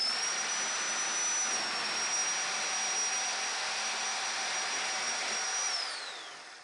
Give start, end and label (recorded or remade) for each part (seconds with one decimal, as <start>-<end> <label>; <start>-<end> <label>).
0.0-6.6 recorded